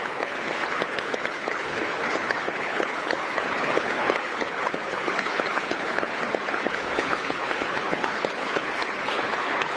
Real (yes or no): no